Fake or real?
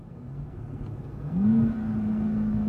fake